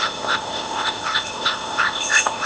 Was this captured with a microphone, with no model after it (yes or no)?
no